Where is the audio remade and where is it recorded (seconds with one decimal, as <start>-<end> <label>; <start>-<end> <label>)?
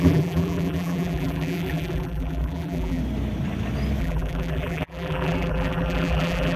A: 0.0-3.0 remade; 3.0-4.0 recorded; 4.0-6.6 remade